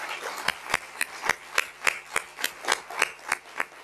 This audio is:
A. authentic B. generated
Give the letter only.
A